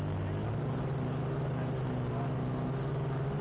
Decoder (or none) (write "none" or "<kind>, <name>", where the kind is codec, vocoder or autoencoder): none